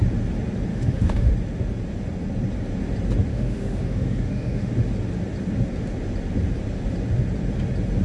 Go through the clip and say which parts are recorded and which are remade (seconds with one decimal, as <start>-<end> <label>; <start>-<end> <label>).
0.0-0.7 recorded; 0.7-1.3 remade; 1.3-3.3 recorded; 3.3-4.7 remade; 4.7-8.0 recorded

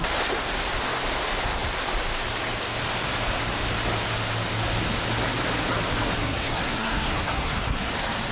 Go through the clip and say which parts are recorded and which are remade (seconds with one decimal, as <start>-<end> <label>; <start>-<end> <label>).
0.0-6.2 recorded; 6.2-7.9 remade; 7.9-8.3 recorded

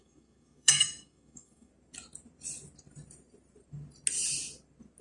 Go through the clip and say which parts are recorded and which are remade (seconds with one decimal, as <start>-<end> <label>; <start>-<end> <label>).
0.0-1.7 remade; 1.7-5.0 recorded

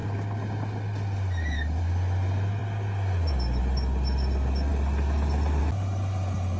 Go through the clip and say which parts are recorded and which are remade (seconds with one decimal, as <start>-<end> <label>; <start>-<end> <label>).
0.0-6.6 recorded